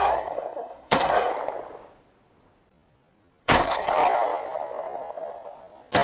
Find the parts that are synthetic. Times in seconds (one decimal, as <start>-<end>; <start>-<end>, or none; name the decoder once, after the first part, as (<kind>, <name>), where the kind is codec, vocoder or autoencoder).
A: 0.0-1.3 (codec, SNAC); 3.4-3.9